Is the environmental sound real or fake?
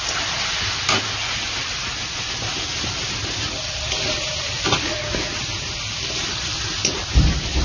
real